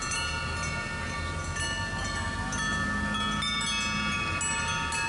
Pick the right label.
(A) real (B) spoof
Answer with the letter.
A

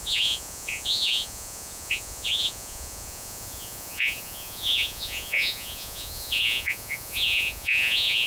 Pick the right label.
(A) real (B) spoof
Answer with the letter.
B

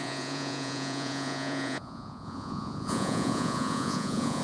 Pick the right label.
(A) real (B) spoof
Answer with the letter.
B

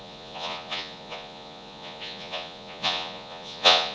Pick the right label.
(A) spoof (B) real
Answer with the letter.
A